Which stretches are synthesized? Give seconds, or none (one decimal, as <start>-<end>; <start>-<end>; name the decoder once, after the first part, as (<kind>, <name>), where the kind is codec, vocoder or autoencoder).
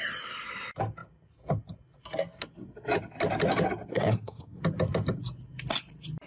3.9-4.6 (codec, SNAC)